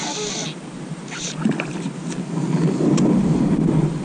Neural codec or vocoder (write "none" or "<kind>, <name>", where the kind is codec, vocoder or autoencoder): none